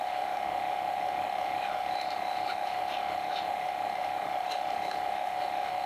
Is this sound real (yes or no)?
no